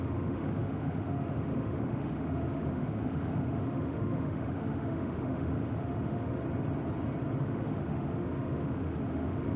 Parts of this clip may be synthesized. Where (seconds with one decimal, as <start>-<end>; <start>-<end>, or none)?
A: 0.0-6.4; 7.4-9.6